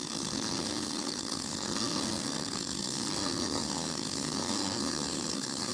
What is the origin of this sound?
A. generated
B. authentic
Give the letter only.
A